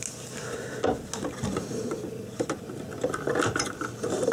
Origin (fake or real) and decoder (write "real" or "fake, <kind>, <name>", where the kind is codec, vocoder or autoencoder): real